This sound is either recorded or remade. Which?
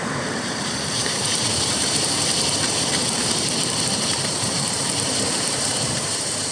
remade